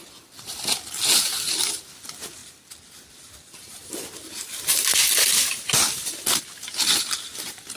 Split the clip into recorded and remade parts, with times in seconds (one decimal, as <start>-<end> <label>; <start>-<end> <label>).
0.0-7.8 recorded